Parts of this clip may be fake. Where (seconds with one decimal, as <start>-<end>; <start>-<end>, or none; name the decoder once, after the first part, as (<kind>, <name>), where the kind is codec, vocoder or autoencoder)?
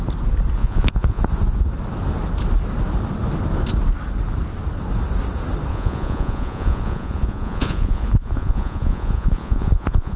0.6-1.2 (vocoder, Vocos); 5.7-10.2